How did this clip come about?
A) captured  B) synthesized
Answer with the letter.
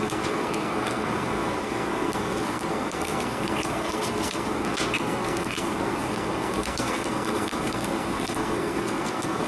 B